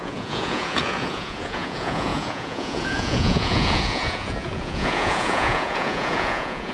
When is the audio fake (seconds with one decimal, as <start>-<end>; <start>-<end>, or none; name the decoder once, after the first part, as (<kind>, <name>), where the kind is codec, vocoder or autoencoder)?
0.0-6.7 (vocoder, Vocos)